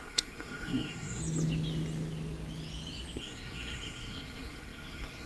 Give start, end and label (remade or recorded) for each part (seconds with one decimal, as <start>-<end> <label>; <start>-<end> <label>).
0.0-1.2 remade; 1.2-3.2 recorded; 3.2-5.3 remade